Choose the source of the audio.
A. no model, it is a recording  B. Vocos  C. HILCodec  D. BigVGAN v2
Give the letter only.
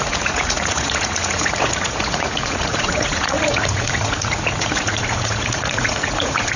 B